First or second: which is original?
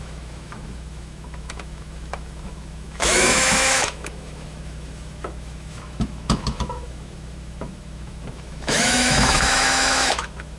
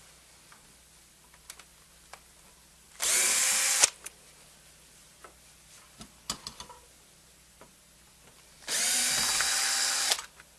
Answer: second